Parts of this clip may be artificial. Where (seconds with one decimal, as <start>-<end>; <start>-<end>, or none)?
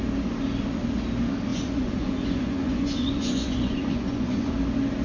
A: 1.5-4.5